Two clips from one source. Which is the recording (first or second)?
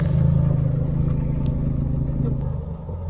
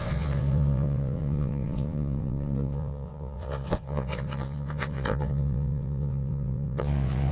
first